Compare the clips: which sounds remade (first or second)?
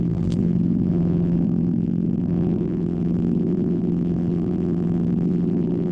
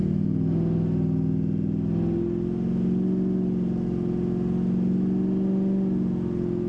first